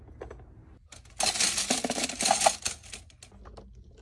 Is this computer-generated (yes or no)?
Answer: no